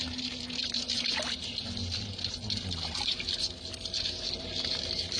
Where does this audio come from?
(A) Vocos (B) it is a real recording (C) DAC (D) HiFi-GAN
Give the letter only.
B